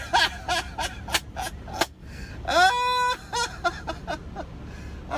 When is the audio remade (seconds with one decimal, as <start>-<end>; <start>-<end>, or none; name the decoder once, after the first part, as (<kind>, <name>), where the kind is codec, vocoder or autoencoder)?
1.7-2.3 (codec, SNAC)

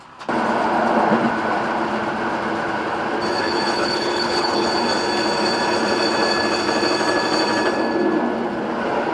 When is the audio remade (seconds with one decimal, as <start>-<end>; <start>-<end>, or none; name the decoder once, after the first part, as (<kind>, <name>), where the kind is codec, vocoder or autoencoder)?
3.4-4.7 (codec, HILCodec)

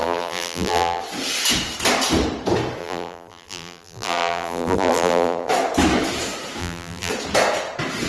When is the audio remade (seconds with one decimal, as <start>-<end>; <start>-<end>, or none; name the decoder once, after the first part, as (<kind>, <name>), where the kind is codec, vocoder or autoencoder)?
0.0-1.0 (vocoder, BigVGAN v2); 2.8-5.5; 6.6-7.1

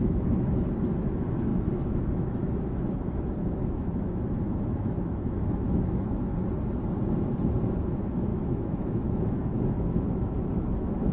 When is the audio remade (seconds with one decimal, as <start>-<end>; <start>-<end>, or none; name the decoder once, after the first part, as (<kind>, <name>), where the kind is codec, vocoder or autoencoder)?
0.0-6.3 (autoencoder, DAC-VAE); 7.6-11.1

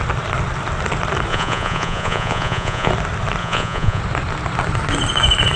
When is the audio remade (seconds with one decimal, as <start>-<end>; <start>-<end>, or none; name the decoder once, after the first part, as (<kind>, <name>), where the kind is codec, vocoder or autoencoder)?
1.3-2.9 (vocoder, Vocos); 3.4-4.0

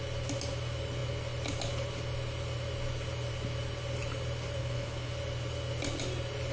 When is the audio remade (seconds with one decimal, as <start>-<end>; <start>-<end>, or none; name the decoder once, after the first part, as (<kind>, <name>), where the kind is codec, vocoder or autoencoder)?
4.6-5.1 (codec, HILCodec)